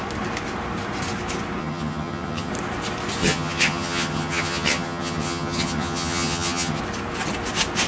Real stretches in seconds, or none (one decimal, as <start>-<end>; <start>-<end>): 0.0-1.6; 2.5-3.2; 6.8-7.9